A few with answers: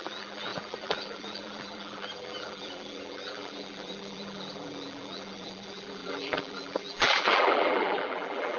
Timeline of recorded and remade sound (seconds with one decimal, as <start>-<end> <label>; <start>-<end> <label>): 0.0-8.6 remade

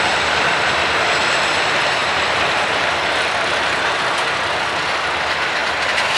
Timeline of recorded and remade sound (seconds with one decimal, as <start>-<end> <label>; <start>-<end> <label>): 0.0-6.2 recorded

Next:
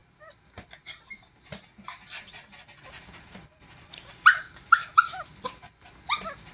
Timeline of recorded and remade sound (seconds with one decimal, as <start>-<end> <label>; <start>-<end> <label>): 0.0-3.0 recorded; 3.0-4.5 remade; 4.5-6.5 recorded

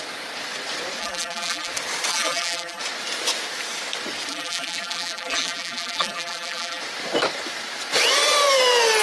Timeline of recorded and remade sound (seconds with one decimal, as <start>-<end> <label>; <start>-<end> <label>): 0.0-1.0 recorded; 1.0-1.7 remade; 1.7-2.1 recorded; 2.1-2.8 remade; 2.8-4.3 recorded; 4.3-6.8 remade; 6.8-9.0 recorded

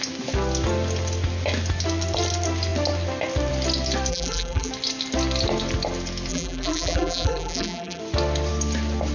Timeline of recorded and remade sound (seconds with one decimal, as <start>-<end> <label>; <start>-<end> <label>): 0.0-4.1 recorded; 4.1-4.7 remade; 4.7-6.3 recorded; 6.3-8.0 remade; 8.0-9.1 recorded